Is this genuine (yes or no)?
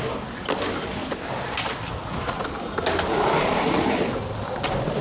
yes